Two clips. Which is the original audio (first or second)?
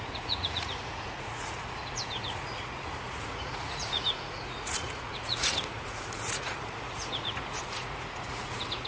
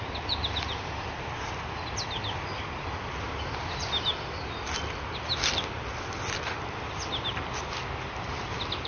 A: second